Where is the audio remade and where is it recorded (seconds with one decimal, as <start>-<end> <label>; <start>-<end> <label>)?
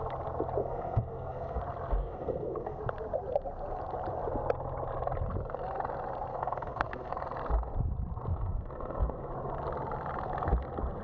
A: 0.0-0.6 recorded; 0.6-1.6 remade; 1.6-2.0 recorded; 2.0-2.8 remade; 2.8-6.3 recorded; 6.3-7.1 remade; 7.1-8.3 recorded; 8.3-9.3 remade; 9.3-11.0 recorded